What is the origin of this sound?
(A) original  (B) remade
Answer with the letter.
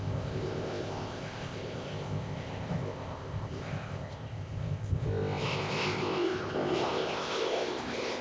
B